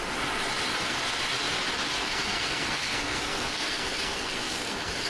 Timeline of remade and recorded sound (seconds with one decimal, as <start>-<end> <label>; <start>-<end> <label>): 0.0-0.7 recorded; 0.7-1.2 remade; 1.2-2.0 recorded; 2.0-5.1 remade